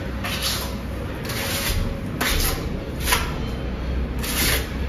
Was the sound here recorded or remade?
recorded